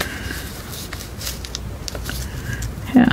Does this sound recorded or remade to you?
recorded